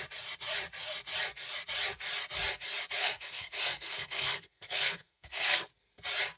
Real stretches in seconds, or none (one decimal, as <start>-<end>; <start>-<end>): 0.0-3.0; 5.6-6.4